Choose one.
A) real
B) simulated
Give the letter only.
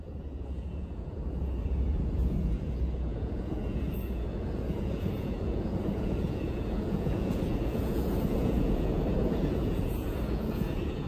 B